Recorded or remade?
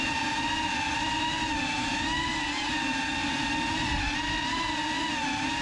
recorded